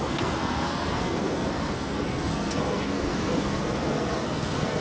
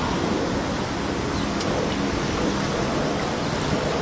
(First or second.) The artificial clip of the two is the first